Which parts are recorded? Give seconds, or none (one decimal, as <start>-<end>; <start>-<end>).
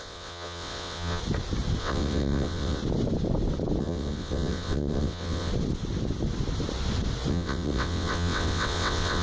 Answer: 1.2-1.8; 2.8-3.8; 5.5-7.3